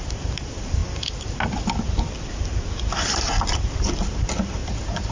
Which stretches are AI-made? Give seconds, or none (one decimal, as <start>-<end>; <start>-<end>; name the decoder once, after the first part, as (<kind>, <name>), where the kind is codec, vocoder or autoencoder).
0.0-0.8 (vocoder, BigVGAN v2); 3.9-5.1